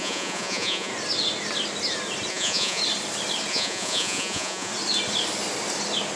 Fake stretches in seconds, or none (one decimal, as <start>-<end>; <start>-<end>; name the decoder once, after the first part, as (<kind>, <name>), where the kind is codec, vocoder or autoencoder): 0.0-0.9 (vocoder, Vocos); 2.3-2.8; 3.5-4.7

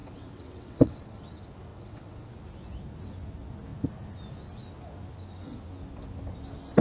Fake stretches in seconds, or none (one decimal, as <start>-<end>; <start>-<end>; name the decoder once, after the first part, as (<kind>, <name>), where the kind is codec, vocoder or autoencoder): 0.0-1.2 (vocoder, WaveNeXt); 1.7-2.3

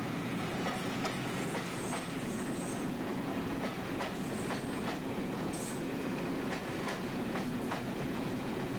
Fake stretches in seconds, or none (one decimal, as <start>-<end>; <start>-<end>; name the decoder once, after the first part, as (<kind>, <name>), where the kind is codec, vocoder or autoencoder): 0.0-8.8 (vocoder, Vocos)

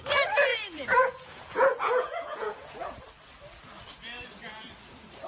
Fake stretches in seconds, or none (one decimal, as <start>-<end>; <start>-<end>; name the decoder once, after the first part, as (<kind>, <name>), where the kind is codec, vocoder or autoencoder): 0.5-3.0 (vocoder, Vocos)

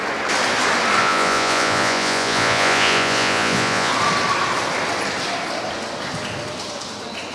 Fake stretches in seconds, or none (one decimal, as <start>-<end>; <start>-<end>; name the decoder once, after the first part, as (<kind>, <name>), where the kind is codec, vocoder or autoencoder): 1.0-3.9 (vocoder, Vocos)

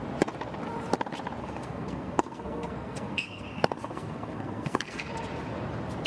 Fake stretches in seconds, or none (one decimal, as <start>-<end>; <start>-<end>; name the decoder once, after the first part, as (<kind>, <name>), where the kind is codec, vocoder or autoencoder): 1.4-5.1 (codec, SNAC)